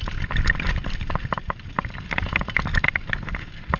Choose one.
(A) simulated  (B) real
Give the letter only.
B